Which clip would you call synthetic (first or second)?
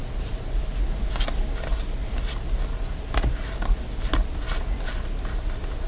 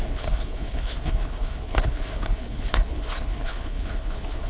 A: second